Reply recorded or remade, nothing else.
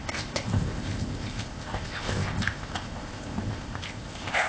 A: remade